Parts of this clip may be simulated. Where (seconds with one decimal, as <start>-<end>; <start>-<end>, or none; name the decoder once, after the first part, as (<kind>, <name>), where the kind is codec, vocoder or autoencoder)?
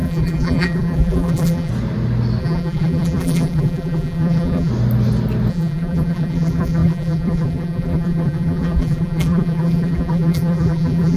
0.0-1.7 (vocoder, BigVGAN v2); 2.4-4.7; 5.5-11.2